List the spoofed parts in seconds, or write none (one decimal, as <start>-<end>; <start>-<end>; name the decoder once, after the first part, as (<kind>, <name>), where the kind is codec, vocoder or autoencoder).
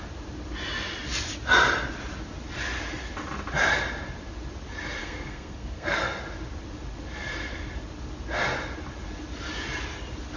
5.0-6.2 (codec, SNAC)